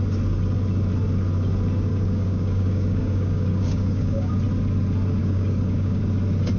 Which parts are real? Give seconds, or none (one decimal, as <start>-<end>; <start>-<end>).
0.0-1.9; 4.3-5.2; 6.0-6.6